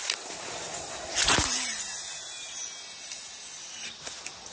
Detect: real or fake real